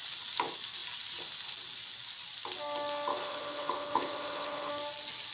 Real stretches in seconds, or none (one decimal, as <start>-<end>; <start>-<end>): 0.0-3.1; 4.7-5.3